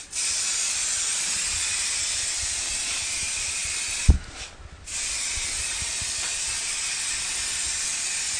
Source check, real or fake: real